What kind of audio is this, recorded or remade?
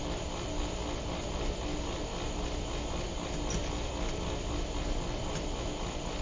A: recorded